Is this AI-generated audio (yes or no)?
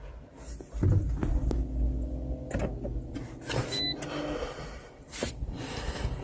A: no